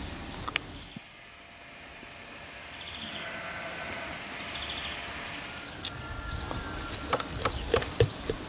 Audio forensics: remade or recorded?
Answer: recorded